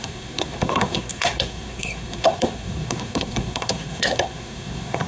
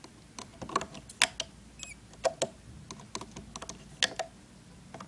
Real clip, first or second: second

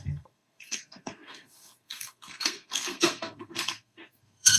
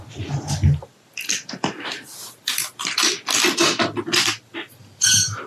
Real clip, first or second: second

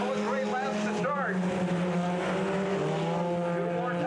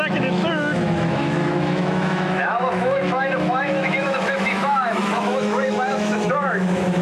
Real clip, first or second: first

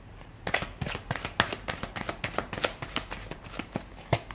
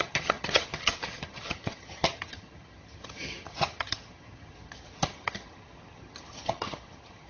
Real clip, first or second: first